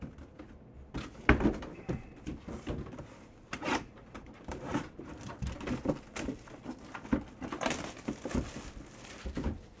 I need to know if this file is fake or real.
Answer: real